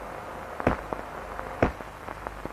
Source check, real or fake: real